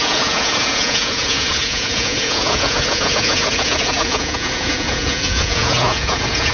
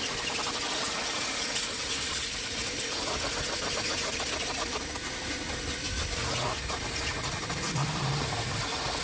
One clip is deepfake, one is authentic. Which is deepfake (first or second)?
first